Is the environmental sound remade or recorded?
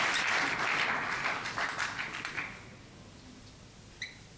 recorded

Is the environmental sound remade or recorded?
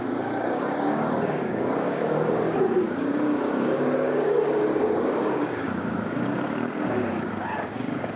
remade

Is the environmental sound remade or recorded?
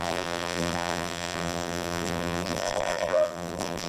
remade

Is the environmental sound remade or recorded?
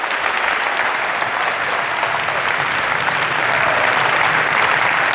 remade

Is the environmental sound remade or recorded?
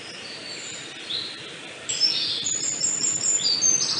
recorded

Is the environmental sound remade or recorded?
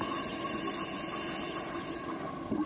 recorded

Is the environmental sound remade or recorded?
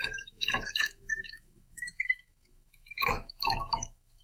remade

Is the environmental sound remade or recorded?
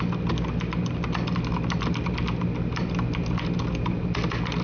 recorded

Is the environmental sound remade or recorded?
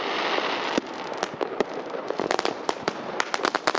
recorded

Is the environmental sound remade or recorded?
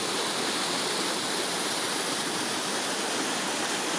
remade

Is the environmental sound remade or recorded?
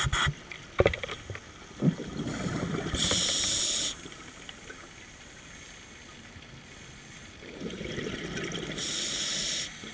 recorded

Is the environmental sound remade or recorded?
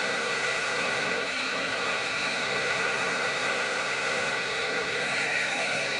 remade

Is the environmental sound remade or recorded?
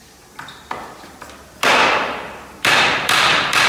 remade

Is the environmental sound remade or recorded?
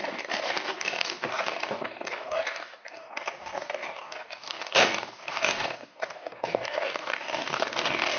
remade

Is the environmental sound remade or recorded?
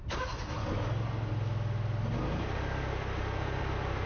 recorded